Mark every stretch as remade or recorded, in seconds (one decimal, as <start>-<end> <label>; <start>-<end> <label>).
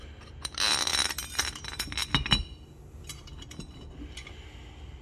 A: 0.0-5.0 recorded